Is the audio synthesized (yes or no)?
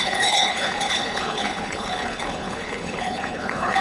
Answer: yes